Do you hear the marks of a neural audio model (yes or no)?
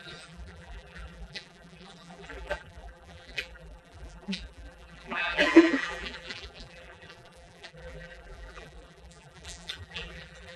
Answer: yes